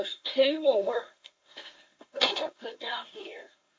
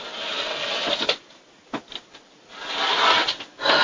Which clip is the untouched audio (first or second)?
second